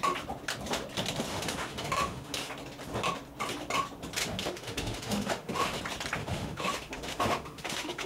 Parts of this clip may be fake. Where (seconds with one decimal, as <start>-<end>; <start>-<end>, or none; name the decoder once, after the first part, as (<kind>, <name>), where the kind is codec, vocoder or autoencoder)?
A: 1.3-2.5 (autoencoder, DAC-VAE); 4.2-5.8; 6.2-8.1